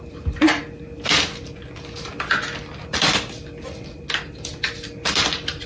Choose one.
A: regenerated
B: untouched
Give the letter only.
B